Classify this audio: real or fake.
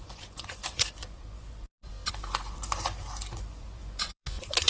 fake